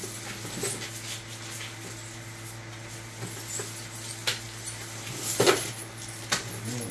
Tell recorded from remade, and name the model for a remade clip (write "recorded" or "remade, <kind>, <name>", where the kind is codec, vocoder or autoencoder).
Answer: recorded